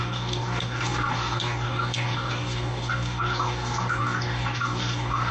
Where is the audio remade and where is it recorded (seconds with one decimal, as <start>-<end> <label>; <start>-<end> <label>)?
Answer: 0.0-5.3 remade